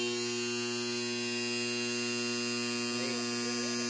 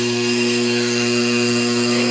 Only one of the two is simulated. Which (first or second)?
second